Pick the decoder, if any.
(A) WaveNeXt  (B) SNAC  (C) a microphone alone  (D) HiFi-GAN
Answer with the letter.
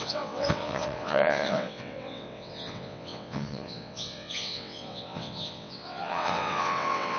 A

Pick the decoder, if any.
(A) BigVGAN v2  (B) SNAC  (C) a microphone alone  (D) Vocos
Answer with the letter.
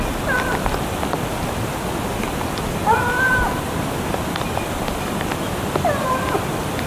C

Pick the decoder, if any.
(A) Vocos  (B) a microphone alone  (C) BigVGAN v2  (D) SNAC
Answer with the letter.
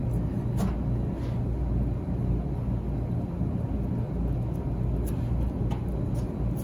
B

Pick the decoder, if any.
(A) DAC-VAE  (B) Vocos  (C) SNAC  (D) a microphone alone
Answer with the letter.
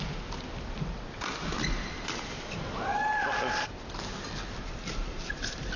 D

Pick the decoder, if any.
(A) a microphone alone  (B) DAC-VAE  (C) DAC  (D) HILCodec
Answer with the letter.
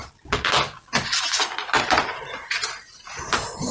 A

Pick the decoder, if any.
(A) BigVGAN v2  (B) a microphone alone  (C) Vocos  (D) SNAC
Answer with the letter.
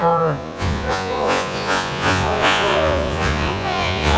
C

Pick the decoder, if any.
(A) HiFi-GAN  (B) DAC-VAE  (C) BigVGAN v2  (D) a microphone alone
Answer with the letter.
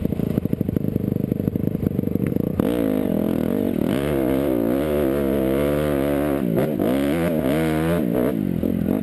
D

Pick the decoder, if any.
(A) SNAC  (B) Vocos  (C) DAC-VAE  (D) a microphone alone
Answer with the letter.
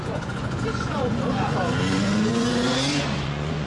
B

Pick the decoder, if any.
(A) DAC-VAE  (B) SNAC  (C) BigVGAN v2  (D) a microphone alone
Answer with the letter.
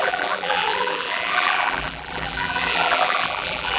C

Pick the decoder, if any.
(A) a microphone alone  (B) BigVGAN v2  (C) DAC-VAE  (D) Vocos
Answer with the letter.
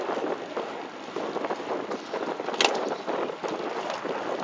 A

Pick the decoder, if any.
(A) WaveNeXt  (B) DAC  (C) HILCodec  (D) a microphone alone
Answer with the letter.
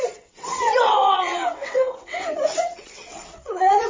A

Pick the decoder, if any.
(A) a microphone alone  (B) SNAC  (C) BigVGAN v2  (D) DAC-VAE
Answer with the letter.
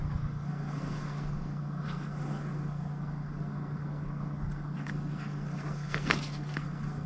B